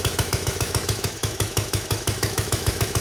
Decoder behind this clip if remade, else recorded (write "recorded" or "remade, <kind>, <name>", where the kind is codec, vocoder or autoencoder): remade, autoencoder, DAC-VAE